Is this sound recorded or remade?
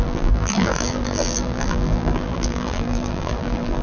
remade